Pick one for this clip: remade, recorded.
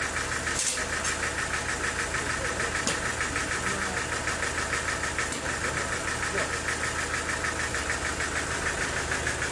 recorded